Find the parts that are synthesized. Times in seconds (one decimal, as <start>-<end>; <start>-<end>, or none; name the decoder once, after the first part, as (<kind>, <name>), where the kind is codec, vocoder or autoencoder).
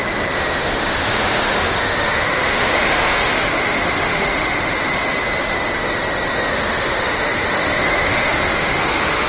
0.7-5.0 (autoencoder, DAC-VAE); 6.5-9.3